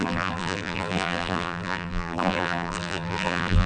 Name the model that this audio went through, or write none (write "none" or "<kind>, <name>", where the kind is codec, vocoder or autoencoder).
vocoder, BigVGAN v2